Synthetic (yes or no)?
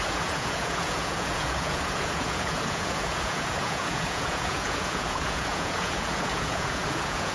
yes